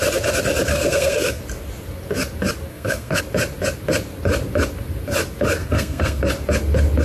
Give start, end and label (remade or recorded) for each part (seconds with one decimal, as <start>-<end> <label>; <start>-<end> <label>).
0.0-0.7 recorded; 0.7-1.4 remade; 1.4-2.7 recorded; 2.7-3.2 remade; 3.2-5.6 recorded; 5.6-6.2 remade; 6.2-7.0 recorded